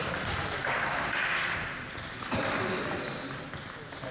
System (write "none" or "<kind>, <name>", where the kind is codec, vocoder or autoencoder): none